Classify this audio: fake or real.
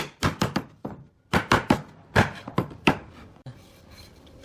fake